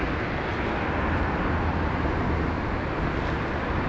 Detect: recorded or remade recorded